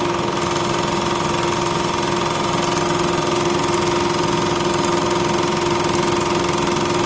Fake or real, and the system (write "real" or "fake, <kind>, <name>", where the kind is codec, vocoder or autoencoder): real